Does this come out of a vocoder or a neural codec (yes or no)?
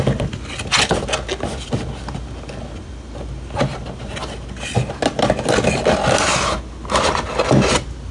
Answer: no